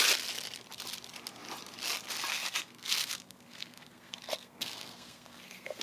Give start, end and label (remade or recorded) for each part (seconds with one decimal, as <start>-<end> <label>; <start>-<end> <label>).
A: 0.0-2.3 recorded; 2.3-5.8 remade